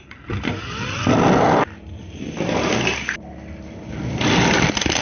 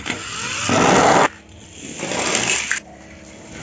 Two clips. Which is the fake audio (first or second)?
first